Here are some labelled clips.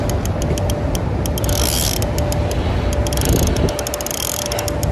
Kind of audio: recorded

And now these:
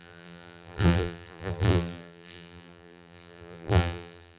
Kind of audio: remade